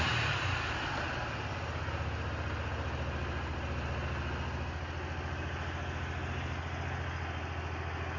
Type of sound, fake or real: real